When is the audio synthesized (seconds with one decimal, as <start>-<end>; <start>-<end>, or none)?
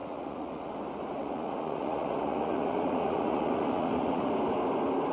0.0-0.7; 1.2-4.3